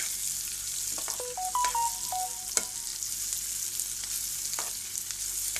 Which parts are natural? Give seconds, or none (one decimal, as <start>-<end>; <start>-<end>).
0.0-5.6